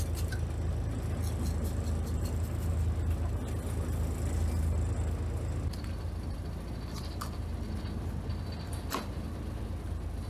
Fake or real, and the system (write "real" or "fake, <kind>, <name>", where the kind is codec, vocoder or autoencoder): real